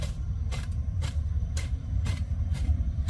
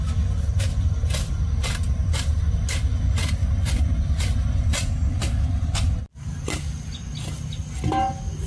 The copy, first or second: first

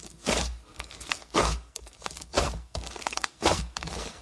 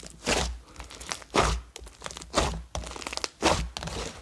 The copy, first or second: first